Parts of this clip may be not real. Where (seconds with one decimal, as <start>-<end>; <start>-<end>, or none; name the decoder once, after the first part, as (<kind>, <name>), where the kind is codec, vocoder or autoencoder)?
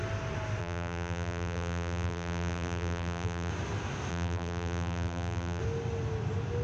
0.6-3.5 (vocoder, BigVGAN v2); 4.1-5.6